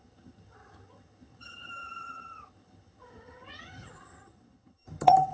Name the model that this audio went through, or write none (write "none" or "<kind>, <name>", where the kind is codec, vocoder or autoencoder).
vocoder, HiFi-GAN